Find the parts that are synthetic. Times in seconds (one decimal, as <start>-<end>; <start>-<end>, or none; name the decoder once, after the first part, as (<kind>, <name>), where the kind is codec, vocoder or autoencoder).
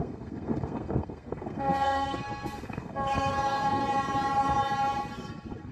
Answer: 0.0-3.8 (codec, SNAC); 5.1-5.7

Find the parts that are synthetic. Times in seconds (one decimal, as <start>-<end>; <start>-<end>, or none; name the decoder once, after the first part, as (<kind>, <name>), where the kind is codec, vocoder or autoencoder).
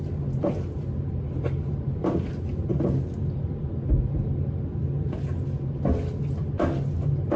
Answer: none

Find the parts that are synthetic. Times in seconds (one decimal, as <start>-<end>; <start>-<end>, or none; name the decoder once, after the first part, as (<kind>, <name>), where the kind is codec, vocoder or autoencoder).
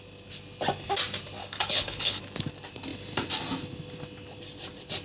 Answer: 1.4-2.2 (codec, HILCodec)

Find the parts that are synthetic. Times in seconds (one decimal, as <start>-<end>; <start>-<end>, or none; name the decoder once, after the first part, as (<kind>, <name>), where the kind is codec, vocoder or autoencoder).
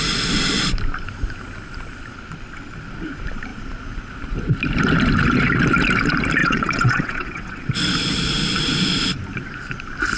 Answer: 6.4-7.7 (vocoder, WaveNeXt)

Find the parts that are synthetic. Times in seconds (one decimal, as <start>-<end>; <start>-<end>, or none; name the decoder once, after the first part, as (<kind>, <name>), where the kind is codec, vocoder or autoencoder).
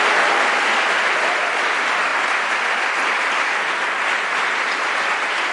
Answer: none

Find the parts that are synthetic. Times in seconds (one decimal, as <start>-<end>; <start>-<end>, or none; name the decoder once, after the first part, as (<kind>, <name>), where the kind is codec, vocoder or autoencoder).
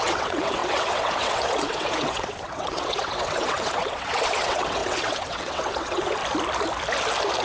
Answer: 0.0-6.2 (vocoder, WaveNeXt)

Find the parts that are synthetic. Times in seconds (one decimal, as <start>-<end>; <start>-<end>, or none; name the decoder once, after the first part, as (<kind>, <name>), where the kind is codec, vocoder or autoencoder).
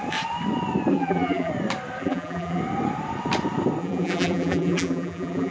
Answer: 0.9-1.5 (vocoder, BigVGAN v2); 2.0-2.6; 3.8-5.5